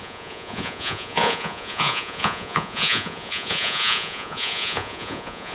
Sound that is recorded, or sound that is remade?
remade